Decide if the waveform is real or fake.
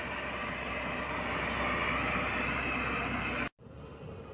real